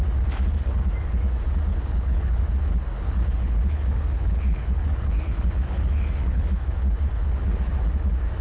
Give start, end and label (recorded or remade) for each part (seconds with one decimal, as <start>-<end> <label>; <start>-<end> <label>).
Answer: 0.0-1.7 recorded; 1.7-2.4 remade; 2.4-2.9 recorded; 2.9-7.7 remade; 7.7-8.4 recorded